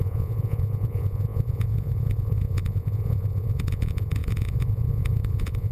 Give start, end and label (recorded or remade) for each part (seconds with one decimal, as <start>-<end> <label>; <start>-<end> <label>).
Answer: 0.0-5.7 remade